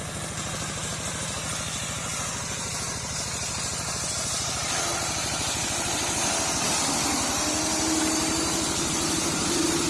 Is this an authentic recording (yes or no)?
yes